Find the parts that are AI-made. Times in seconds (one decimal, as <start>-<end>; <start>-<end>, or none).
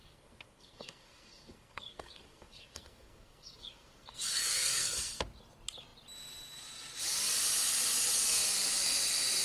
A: 0.0-5.2